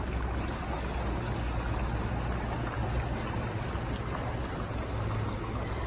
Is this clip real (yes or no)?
yes